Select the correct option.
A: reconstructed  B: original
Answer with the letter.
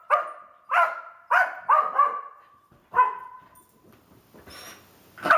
B